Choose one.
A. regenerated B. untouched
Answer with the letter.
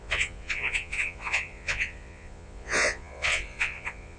A